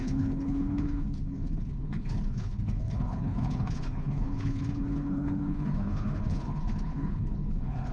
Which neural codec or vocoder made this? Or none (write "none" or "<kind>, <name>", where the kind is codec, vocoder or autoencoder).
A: codec, HILCodec